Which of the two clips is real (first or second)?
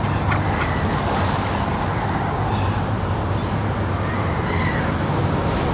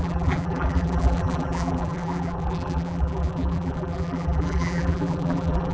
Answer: first